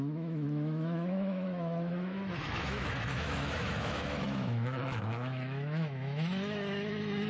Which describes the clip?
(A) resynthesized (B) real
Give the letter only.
A